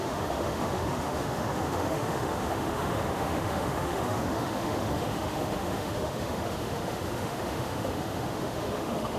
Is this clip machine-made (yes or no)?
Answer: yes